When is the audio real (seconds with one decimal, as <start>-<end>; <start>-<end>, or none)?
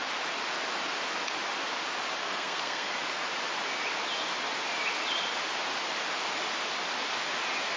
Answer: 0.0-2.2; 2.9-7.8